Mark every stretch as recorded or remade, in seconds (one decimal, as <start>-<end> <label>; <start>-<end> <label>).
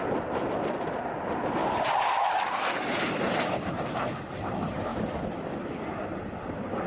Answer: 0.0-1.6 recorded; 1.6-3.8 remade; 3.8-6.9 recorded